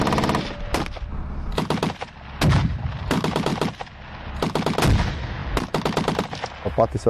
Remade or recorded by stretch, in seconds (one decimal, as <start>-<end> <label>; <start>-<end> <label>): 0.0-7.1 recorded